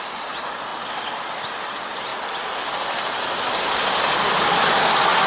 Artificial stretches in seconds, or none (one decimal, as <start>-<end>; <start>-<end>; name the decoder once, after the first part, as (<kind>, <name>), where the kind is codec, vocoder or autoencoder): none